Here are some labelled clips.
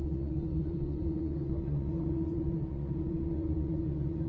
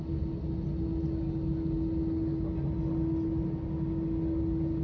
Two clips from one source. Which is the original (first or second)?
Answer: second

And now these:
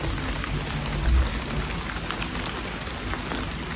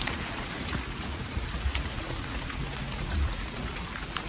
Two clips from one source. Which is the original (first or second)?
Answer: first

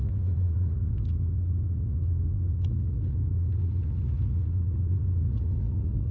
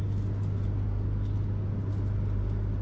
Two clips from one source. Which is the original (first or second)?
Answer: second